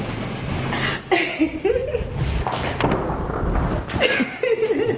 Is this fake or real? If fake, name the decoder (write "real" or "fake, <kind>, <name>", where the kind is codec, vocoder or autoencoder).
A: real